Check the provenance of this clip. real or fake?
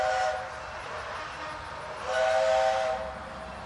real